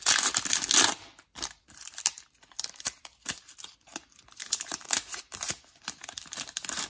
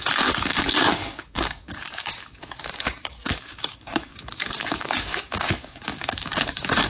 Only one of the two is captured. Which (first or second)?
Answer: first